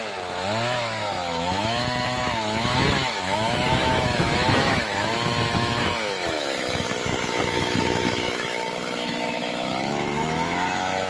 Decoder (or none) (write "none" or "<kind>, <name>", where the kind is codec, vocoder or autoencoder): autoencoder, DAC-VAE